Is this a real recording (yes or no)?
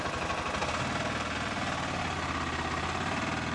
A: yes